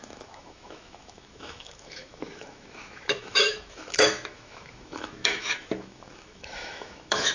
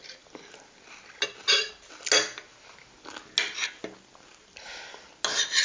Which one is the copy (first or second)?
first